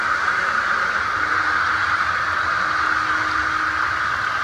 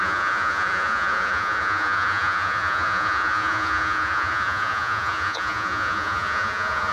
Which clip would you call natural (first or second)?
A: first